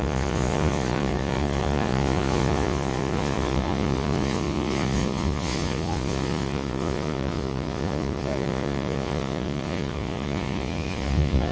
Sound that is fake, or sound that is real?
fake